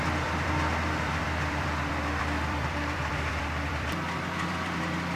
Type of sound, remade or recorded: remade